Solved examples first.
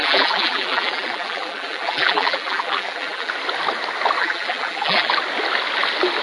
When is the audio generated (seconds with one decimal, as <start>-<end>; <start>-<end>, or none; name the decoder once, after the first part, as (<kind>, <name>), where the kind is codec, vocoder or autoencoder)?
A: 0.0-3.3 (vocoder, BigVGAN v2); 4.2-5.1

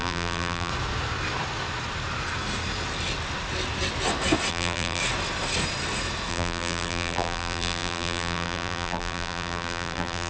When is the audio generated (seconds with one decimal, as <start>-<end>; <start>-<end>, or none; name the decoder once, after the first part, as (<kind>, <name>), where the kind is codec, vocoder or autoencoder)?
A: 0.0-0.7 (vocoder, BigVGAN v2); 4.5-5.0; 6.3-10.3

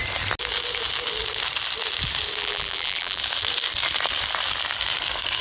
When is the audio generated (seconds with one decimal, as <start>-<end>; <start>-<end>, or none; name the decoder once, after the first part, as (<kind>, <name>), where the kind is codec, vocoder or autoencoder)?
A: 2.4-3.2 (vocoder, BigVGAN v2)